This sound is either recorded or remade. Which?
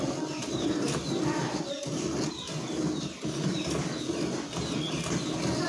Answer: recorded